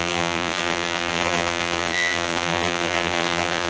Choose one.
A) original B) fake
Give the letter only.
B